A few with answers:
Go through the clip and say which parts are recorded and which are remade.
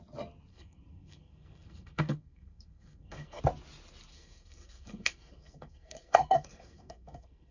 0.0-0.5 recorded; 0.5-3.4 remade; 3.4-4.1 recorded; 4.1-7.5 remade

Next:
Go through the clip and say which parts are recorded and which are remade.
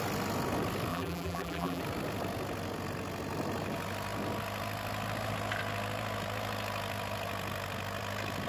0.0-0.9 recorded; 0.9-1.8 remade; 1.8-8.5 recorded